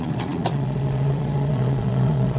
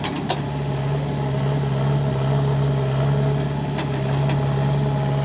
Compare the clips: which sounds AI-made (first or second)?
first